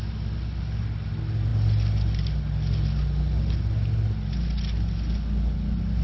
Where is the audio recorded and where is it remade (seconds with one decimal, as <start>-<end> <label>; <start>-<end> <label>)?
0.0-6.0 recorded